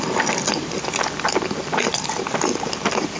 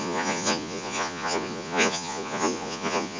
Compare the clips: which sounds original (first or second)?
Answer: first